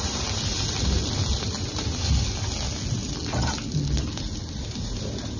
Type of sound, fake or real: real